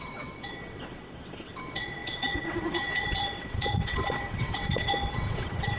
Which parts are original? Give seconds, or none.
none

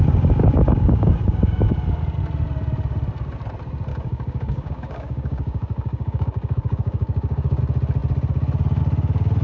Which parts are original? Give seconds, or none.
0.0-0.4; 1.7-3.9; 7.6-9.4

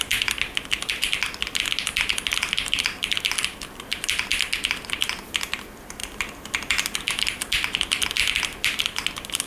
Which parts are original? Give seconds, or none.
none

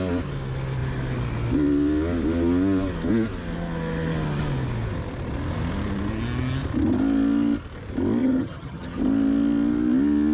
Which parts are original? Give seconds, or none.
0.0-8.2; 9.0-10.3